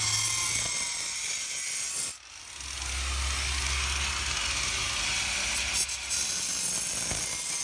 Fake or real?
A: real